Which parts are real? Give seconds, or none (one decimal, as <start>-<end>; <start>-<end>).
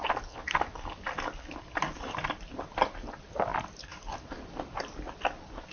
0.0-1.9; 3.5-4.1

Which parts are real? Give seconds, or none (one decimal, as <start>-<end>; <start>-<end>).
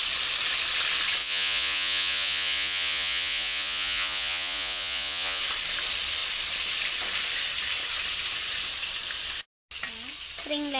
0.0-1.2; 5.4-10.8